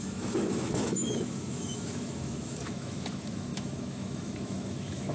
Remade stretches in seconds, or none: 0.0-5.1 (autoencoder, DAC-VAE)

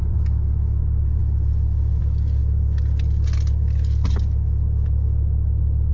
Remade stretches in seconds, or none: none

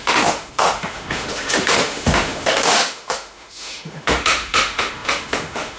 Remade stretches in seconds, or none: 0.0-5.8 (autoencoder, DAC-VAE)

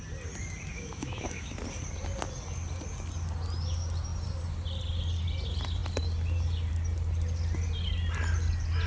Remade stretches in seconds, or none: 0.7-1.5 (autoencoder, DAC-VAE)

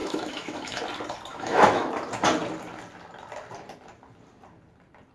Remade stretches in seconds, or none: 0.0-0.8 (autoencoder, DAC-VAE); 1.3-1.9

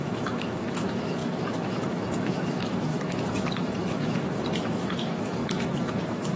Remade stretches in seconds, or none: 0.0-6.4 (autoencoder, DAC-VAE)

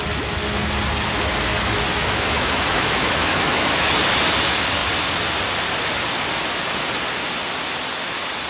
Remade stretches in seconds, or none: 1.5-3.9 (autoencoder, DAC-VAE)